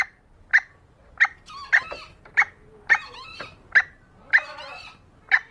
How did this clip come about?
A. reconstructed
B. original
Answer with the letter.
B